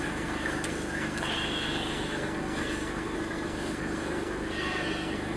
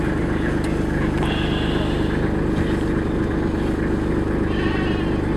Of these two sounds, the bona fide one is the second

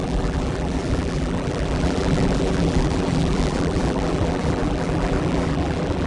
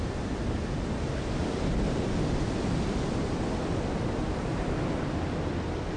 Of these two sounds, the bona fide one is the second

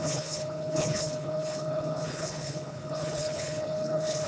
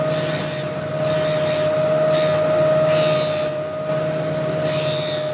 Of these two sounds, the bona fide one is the second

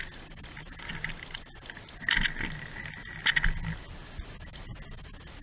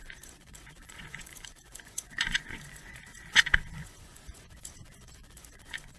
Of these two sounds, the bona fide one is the first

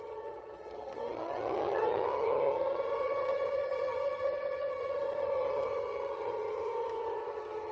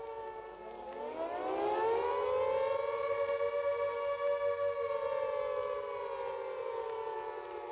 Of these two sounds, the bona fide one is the second